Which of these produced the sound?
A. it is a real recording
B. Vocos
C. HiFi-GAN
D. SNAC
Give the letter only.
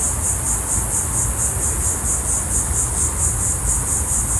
A